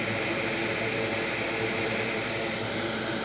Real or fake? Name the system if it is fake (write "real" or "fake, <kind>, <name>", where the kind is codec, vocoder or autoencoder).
real